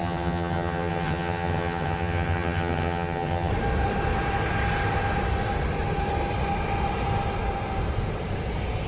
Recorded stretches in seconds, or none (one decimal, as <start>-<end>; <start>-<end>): 3.5-8.9